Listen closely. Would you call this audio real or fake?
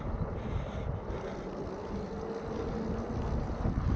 real